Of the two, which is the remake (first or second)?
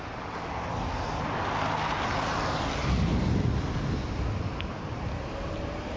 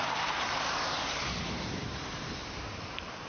second